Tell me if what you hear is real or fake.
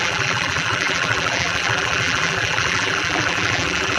fake